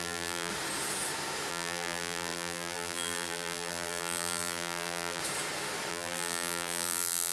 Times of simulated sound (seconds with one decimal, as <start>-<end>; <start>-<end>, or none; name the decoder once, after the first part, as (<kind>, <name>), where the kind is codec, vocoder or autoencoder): 0.0-0.5 (vocoder, BigVGAN v2); 1.5-5.2; 5.9-7.3